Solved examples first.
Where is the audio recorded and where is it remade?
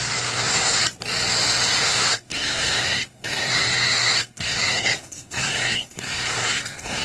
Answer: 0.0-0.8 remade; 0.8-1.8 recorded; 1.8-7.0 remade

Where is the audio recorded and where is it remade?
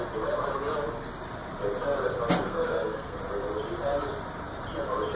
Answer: 0.0-2.4 recorded; 2.4-3.2 remade; 3.2-5.2 recorded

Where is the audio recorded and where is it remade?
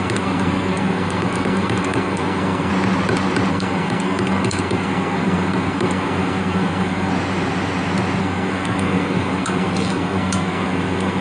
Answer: 0.0-2.7 remade; 2.7-3.5 recorded; 3.5-7.1 remade; 7.1-8.2 recorded; 8.2-11.2 remade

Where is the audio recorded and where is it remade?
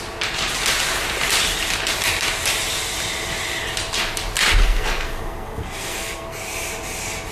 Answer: 0.0-4.5 recorded; 4.5-6.4 remade; 6.4-7.3 recorded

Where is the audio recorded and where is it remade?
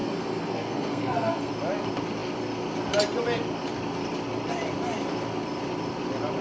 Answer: 0.0-1.5 remade; 1.5-6.4 recorded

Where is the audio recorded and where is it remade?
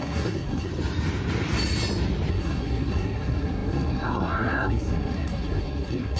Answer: 0.0-0.7 remade; 0.7-2.3 recorded; 2.3-6.2 remade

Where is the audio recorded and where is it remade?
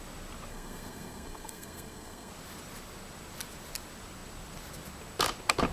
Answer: 0.0-0.5 recorded; 0.5-2.3 remade; 2.3-5.7 recorded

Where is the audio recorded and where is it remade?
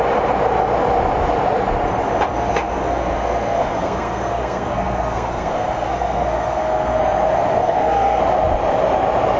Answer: 0.0-2.5 recorded; 2.5-7.0 remade; 7.0-7.6 recorded; 7.6-8.2 remade; 8.2-9.4 recorded